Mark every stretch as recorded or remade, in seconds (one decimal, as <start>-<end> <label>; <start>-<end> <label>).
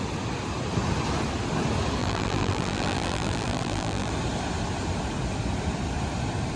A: 0.0-2.0 recorded; 2.0-4.1 remade; 4.1-6.6 recorded